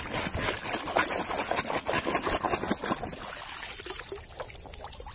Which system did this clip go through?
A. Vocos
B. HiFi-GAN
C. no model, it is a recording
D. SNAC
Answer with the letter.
C